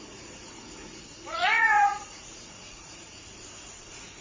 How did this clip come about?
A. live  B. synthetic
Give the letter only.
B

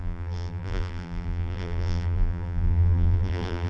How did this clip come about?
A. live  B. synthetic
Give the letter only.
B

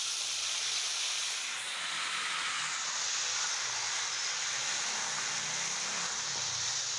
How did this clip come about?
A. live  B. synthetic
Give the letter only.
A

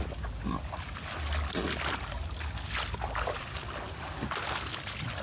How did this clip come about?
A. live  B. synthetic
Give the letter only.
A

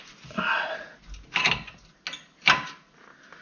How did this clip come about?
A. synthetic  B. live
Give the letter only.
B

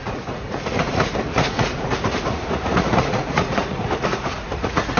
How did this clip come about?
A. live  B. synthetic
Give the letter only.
B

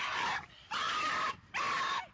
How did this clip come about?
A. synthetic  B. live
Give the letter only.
A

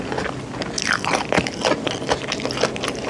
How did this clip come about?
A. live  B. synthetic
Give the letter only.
A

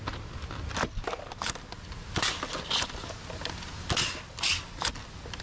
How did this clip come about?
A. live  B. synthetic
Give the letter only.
A